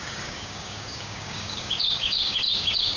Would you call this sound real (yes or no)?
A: no